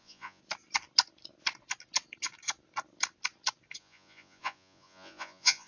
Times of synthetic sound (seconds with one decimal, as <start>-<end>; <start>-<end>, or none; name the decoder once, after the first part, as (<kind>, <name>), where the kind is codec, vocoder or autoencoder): 0.0-0.4 (vocoder, Vocos); 3.8-5.7